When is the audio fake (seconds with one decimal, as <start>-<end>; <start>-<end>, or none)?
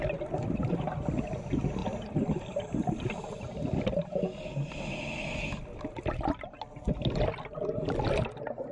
none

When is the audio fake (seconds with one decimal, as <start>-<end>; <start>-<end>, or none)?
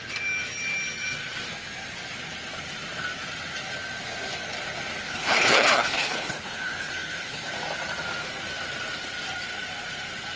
5.0-7.5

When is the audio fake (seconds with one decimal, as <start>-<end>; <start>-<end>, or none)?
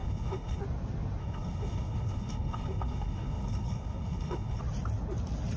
0.0-0.6; 1.2-4.6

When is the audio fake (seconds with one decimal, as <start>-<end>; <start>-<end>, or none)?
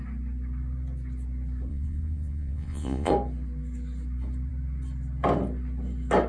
1.7-3.1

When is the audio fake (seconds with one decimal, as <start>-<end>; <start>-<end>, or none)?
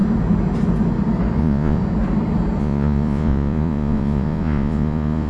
1.4-1.8; 2.6-5.3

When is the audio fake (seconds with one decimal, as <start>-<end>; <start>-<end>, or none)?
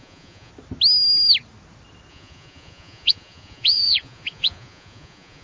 0.0-0.5; 2.1-5.4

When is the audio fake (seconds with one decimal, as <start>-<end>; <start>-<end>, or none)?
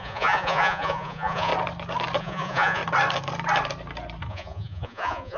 0.0-1.5; 2.2-2.8; 4.3-5.4